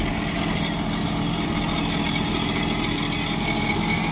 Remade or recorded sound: recorded